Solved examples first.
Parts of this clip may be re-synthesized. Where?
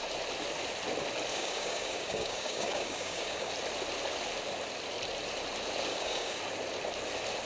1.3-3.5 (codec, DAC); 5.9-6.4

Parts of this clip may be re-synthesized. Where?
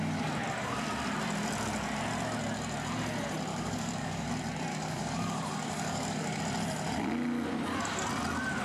3.5-4.3 (codec, DAC); 4.7-6.4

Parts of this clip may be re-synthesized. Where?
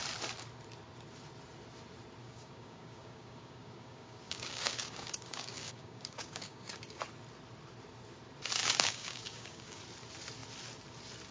2.2-7.0 (codec, DAC); 8.6-9.8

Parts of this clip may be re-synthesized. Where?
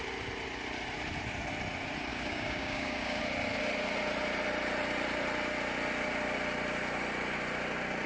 2.1-3.2 (codec, DAC)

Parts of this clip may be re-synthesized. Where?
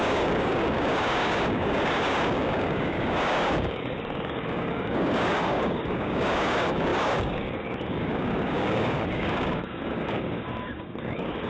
0.0-11.5 (codec, DAC)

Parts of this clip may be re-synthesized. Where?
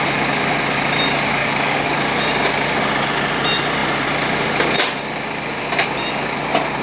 1.4-2.0 (codec, DAC)